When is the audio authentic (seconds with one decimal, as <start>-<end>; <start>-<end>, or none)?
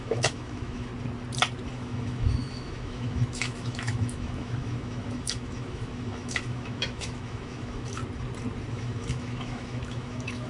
0.9-1.7; 8.0-8.7